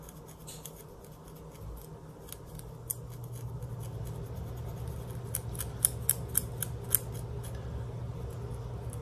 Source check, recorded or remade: recorded